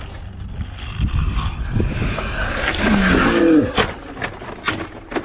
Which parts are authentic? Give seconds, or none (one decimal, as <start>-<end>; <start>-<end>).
0.0-1.2; 3.4-5.2

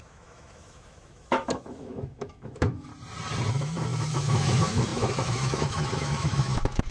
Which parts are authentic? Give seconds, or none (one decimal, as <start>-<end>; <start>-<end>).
2.9-3.5

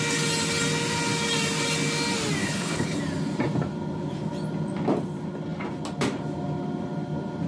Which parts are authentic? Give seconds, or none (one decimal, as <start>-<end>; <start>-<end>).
0.0-2.4; 3.0-7.5

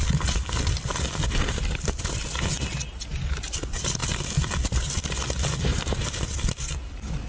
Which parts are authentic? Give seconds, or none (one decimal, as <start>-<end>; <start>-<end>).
0.0-0.9; 2.2-7.3

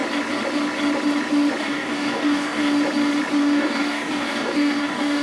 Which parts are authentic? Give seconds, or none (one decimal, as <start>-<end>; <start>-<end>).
0.0-1.6; 2.6-3.4

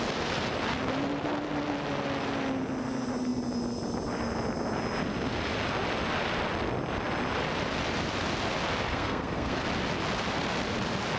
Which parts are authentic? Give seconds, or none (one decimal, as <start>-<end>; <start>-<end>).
0.0-8.9; 9.6-11.2

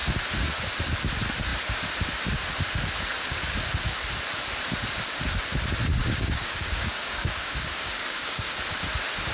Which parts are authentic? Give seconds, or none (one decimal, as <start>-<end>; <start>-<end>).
0.0-6.0; 8.6-9.3

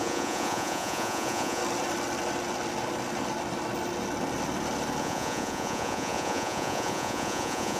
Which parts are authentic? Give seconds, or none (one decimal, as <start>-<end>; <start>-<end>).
1.6-5.0